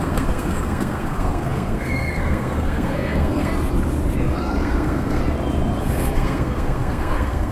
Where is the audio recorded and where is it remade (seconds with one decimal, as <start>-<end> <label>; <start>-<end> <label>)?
0.0-3.5 remade; 3.5-4.2 recorded; 4.2-5.2 remade; 5.2-5.8 recorded; 5.8-7.5 remade